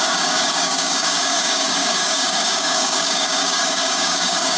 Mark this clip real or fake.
fake